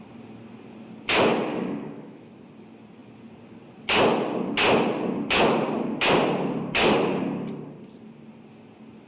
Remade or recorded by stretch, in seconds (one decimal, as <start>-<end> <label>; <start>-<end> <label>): 0.0-1.5 recorded; 1.5-2.3 remade; 2.3-9.1 recorded